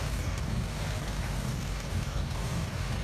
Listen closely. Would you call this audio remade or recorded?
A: remade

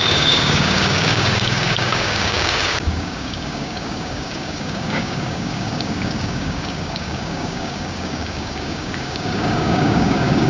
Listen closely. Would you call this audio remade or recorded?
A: remade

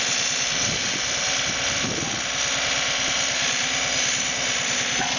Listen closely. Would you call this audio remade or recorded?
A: recorded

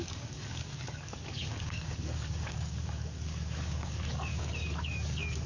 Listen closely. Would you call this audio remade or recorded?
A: remade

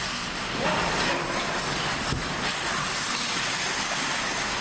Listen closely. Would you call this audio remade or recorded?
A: recorded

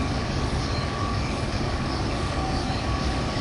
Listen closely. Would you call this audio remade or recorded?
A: remade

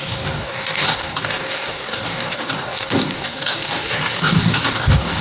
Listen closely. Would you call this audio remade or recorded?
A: remade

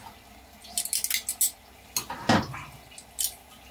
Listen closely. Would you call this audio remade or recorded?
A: recorded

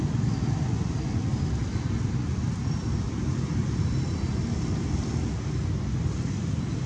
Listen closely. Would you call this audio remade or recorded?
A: recorded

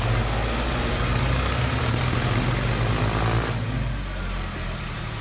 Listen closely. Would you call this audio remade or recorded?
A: recorded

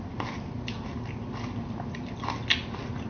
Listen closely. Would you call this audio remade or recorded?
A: recorded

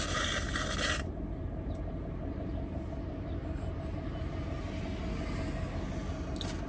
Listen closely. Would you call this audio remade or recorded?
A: recorded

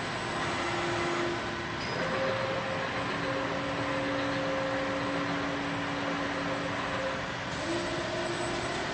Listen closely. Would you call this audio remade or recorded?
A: recorded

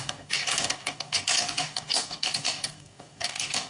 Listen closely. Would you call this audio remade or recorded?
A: remade